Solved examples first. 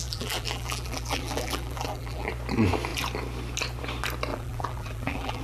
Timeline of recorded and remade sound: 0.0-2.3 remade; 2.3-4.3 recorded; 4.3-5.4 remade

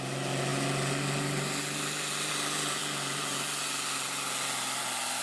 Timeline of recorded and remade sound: 0.0-5.2 recorded

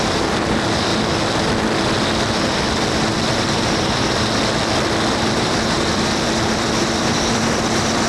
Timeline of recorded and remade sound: 0.0-0.9 remade; 0.9-5.1 recorded; 5.1-8.1 remade